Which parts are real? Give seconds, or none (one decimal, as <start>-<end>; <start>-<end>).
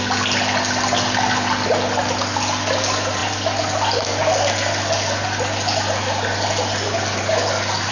0.0-7.9